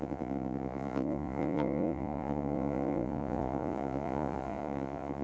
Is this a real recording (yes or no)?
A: no